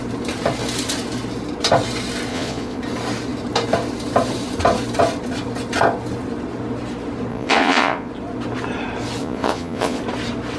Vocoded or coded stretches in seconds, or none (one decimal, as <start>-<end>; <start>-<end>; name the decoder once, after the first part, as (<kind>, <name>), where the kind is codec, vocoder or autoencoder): 2.3-2.8 (vocoder, Vocos); 7.3-8.1; 9.2-10.0